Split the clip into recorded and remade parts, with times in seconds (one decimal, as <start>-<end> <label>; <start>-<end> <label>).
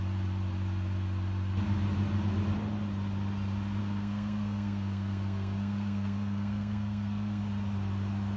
0.0-3.8 recorded; 3.8-7.4 remade; 7.4-8.4 recorded